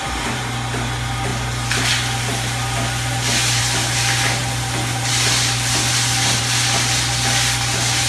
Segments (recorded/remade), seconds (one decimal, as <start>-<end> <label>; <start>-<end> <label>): 0.0-8.1 recorded